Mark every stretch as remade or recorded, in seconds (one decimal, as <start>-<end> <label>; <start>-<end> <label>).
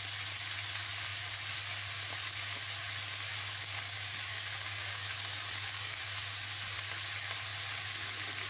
0.0-3.3 recorded; 3.3-6.0 remade; 6.0-8.5 recorded